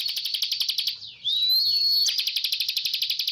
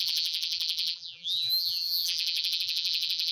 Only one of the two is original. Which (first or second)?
first